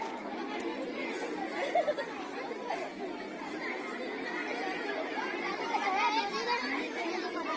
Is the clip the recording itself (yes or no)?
yes